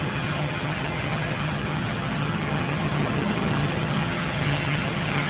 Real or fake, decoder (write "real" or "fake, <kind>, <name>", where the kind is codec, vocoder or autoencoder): fake, vocoder, HiFi-GAN